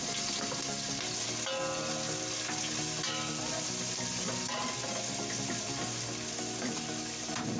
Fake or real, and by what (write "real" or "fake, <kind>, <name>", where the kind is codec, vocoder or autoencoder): real